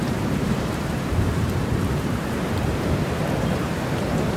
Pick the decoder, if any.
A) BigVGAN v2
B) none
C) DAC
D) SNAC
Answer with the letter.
A